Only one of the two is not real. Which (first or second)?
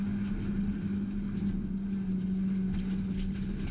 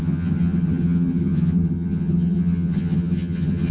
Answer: second